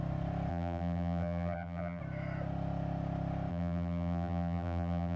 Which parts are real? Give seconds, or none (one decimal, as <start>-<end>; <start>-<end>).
0.0-0.5; 2.0-3.5